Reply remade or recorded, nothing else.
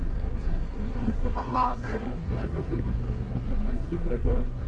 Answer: remade